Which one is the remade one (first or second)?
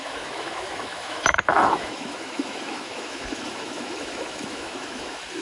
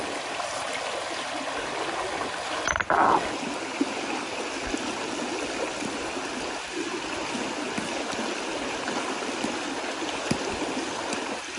first